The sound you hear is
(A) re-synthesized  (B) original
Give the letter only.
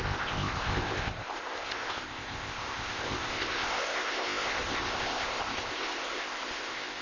A